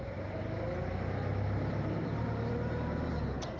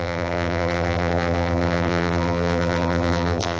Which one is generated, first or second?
second